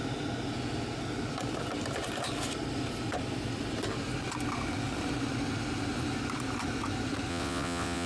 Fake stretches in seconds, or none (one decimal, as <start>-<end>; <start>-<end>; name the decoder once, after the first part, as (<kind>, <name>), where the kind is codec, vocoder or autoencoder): 7.3-8.1 (vocoder, WaveNeXt)